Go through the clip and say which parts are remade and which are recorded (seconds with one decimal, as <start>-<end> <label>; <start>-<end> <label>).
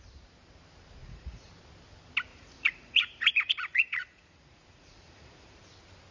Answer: 0.0-1.0 recorded; 1.0-1.5 remade; 1.5-2.3 recorded; 2.3-5.6 remade; 5.6-6.1 recorded